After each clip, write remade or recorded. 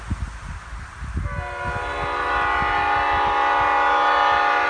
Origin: recorded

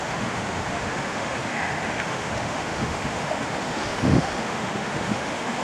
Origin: remade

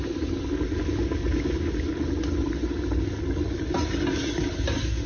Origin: recorded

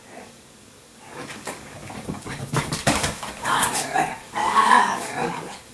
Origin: remade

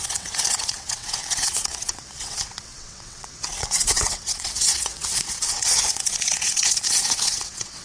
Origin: remade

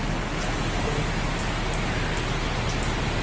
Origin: recorded